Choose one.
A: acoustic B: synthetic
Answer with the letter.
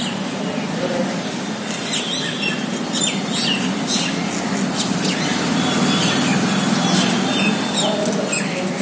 A